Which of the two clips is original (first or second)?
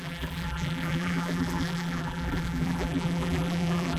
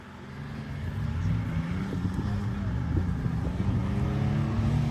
second